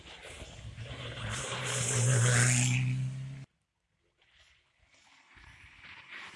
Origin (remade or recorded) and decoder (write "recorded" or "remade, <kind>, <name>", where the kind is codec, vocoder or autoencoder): recorded